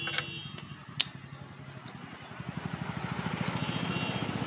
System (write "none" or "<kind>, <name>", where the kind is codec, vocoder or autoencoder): none